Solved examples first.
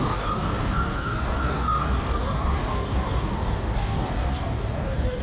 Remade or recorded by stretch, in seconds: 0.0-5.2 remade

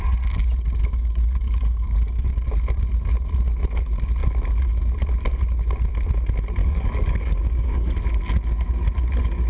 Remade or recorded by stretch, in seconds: 0.0-0.8 recorded; 0.8-2.3 remade; 2.3-6.6 recorded; 6.6-7.9 remade; 7.9-9.5 recorded

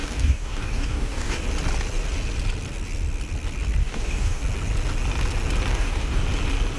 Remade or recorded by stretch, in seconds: 0.0-1.4 remade; 1.4-3.8 recorded; 3.8-4.4 remade; 4.4-5.7 recorded; 5.7-6.2 remade; 6.2-6.8 recorded

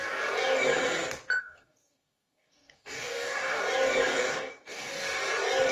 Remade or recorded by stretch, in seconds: 0.0-1.4 recorded; 1.4-3.6 remade; 3.6-4.1 recorded; 4.1-4.9 remade; 4.9-5.7 recorded